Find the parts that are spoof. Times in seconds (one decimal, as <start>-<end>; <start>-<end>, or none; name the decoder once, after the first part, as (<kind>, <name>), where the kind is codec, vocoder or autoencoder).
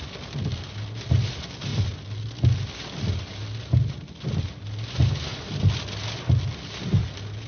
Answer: none